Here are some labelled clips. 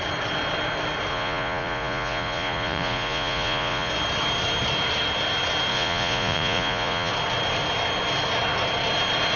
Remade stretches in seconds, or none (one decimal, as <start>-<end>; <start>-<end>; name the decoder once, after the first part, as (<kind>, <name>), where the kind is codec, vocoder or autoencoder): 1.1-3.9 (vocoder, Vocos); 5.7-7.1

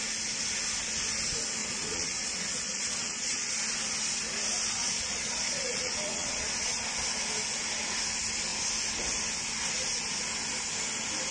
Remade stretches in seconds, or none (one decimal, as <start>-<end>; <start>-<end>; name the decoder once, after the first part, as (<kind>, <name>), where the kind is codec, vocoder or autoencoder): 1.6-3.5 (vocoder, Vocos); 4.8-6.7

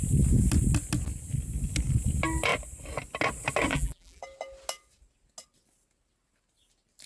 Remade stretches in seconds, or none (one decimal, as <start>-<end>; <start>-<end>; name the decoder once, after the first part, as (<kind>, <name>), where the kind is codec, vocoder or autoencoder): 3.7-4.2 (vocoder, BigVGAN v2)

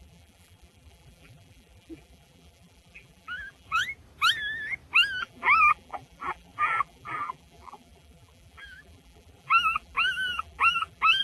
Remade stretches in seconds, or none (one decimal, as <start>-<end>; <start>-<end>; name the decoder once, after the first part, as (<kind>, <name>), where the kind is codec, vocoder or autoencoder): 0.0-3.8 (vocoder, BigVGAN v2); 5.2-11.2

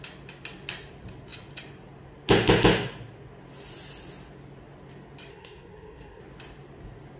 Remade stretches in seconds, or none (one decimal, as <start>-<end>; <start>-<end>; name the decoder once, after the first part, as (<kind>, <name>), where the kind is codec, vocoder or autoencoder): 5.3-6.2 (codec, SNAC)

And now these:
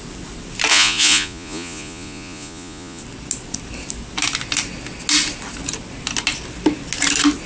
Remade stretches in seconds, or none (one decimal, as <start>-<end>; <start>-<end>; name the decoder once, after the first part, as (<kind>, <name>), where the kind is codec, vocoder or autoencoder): 0.7-3.0 (vocoder, Vocos)